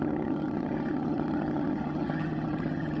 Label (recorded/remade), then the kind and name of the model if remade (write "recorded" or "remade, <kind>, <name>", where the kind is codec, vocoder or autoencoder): remade, vocoder, HiFi-GAN